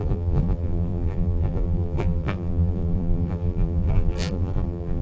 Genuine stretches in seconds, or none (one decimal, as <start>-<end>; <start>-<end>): none